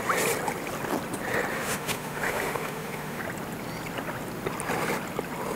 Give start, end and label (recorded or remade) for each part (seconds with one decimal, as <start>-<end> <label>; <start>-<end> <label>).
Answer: 0.0-1.5 recorded; 1.5-3.2 remade; 3.2-5.6 recorded